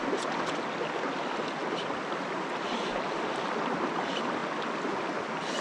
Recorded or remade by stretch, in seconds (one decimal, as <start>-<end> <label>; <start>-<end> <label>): 0.0-5.6 recorded